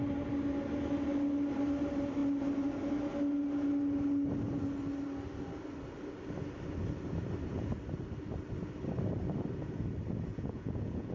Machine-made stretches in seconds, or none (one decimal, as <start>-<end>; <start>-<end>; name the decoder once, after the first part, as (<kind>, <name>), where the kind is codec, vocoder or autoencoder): 10.3-11.1 (vocoder, Vocos)

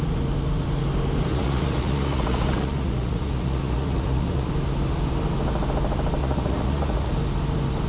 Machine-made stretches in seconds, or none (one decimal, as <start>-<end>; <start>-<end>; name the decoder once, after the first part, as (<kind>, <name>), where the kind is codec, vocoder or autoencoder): 1.3-4.5 (vocoder, Vocos); 6.2-7.1

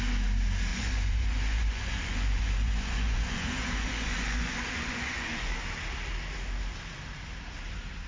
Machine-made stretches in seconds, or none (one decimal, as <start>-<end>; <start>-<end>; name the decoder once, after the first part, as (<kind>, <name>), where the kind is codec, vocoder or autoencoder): 0.7-5.6 (vocoder, Vocos)

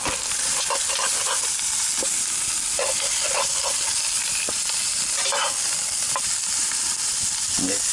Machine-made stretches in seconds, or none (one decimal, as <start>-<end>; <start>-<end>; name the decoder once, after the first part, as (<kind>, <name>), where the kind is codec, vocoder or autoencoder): none